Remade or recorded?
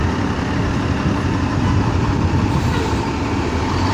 recorded